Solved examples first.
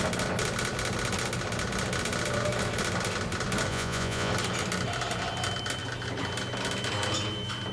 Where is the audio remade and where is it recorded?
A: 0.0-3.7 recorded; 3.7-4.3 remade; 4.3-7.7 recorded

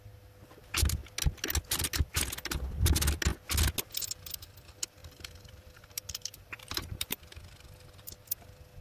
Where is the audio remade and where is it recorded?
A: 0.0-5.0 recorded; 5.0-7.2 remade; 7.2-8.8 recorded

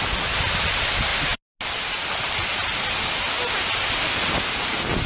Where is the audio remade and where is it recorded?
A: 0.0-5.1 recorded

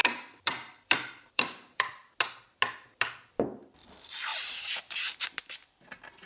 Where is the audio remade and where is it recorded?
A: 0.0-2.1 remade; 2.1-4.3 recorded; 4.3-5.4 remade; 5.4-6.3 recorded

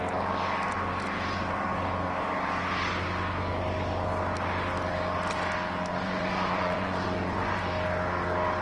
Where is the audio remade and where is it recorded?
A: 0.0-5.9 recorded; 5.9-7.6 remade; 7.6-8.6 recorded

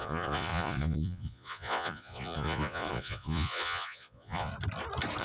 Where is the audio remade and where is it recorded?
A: 0.0-4.5 remade; 4.5-5.2 recorded